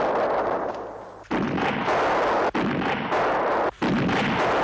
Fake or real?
real